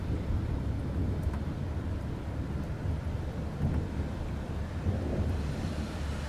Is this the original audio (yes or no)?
yes